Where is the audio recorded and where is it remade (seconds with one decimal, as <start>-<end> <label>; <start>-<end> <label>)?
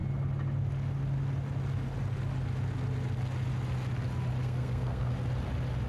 0.0-4.4 recorded; 4.4-5.1 remade; 5.1-5.9 recorded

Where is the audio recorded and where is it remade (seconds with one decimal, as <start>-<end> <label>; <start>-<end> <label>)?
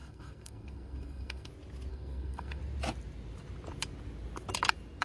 0.0-1.5 remade; 1.5-1.9 recorded; 1.9-2.6 remade; 2.6-5.0 recorded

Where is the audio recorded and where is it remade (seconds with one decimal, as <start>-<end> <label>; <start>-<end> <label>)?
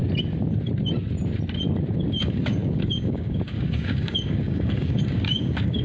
0.0-2.2 recorded; 2.2-5.8 remade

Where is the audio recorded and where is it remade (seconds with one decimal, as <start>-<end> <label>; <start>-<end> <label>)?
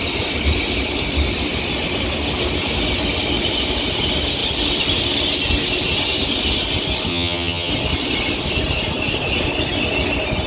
0.0-7.1 recorded; 7.1-7.7 remade; 7.7-10.5 recorded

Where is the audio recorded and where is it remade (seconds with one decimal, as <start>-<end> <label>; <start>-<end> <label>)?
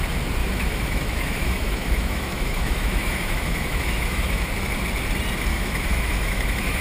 0.0-0.4 recorded; 0.4-4.5 remade; 4.5-5.5 recorded; 5.5-6.8 remade